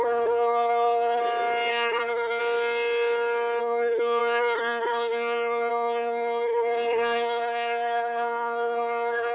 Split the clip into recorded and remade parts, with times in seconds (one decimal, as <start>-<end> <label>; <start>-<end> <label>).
0.0-1.2 remade; 1.2-1.7 recorded; 1.7-2.4 remade; 2.4-3.6 recorded; 3.6-9.3 remade